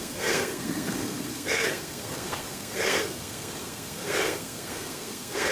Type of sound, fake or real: fake